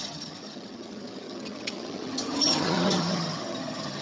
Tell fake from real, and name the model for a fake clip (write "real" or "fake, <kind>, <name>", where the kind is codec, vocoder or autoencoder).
fake, vocoder, HiFi-GAN